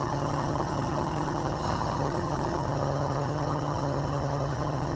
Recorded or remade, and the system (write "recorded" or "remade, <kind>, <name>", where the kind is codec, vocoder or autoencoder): remade, vocoder, HiFi-GAN